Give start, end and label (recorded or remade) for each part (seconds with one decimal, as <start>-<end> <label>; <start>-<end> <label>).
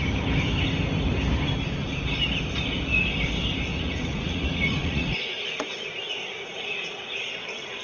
0.0-3.7 recorded; 3.7-7.3 remade; 7.3-7.8 recorded